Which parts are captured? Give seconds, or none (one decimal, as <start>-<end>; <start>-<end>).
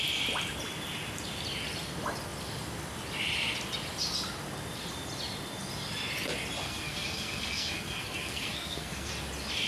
0.0-6.6; 9.1-9.7